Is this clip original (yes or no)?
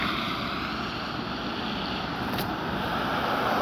yes